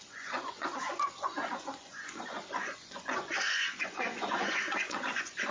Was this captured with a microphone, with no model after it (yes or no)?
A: no